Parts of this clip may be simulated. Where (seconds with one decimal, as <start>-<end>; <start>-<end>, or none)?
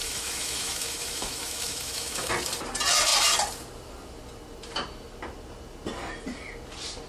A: 0.0-2.3